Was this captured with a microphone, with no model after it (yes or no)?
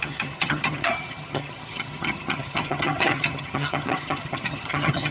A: no